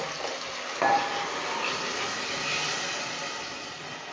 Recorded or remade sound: recorded